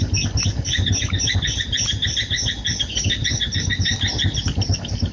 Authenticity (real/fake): real